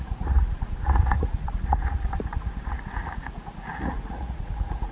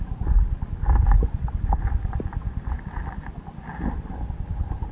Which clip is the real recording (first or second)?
second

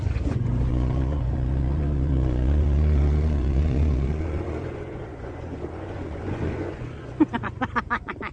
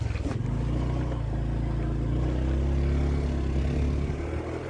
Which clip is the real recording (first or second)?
second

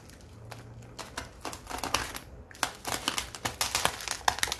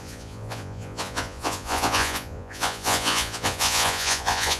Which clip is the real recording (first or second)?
first